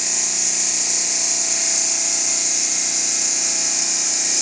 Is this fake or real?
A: real